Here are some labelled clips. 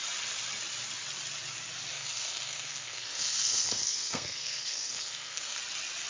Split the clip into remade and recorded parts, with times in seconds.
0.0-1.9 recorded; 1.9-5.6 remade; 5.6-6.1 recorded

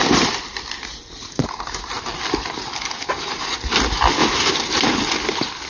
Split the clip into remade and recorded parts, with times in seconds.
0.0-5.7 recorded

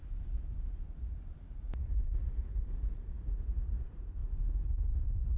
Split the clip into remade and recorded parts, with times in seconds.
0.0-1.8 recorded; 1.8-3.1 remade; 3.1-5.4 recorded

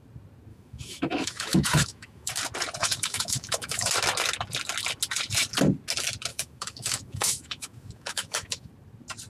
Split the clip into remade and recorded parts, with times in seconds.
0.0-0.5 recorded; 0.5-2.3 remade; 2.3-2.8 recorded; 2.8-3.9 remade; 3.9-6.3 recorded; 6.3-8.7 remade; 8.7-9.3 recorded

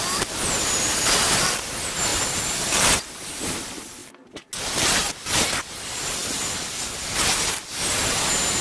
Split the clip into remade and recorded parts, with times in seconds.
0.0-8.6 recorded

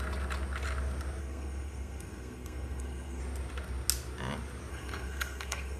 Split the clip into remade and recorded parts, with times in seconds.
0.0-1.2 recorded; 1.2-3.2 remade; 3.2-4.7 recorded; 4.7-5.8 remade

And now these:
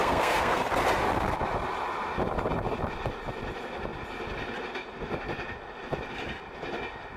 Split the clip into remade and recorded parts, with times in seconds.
0.0-0.6 remade; 0.6-7.2 recorded

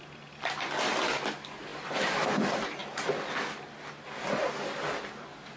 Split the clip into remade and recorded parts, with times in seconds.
0.0-1.7 remade; 1.7-2.3 recorded; 2.3-2.8 remade; 2.8-5.6 recorded